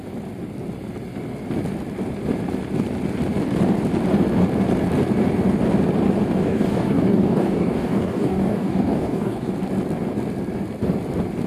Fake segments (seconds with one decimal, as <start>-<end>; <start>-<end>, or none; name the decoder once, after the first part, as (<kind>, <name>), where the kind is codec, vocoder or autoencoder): 6.4-9.5 (codec, DAC)